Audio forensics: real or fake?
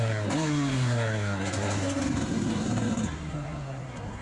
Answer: fake